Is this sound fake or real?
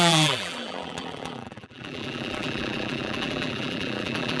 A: fake